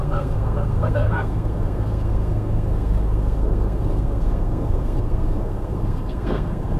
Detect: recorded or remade remade